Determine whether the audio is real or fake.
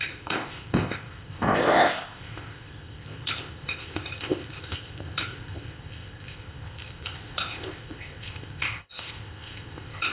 fake